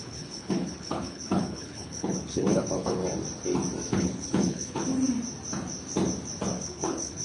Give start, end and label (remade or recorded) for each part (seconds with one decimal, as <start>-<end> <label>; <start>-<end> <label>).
0.0-3.0 remade; 3.0-3.9 recorded; 3.9-4.9 remade; 4.9-6.6 recorded; 6.6-7.2 remade